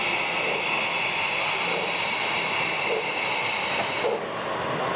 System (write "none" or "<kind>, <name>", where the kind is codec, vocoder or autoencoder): none